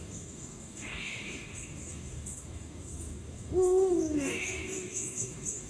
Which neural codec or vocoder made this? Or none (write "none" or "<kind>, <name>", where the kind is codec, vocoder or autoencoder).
codec, DAC